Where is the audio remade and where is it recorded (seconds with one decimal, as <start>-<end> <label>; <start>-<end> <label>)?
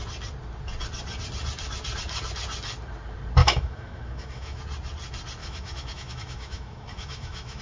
0.0-3.4 recorded; 3.4-4.6 remade; 4.6-5.4 recorded; 5.4-7.6 remade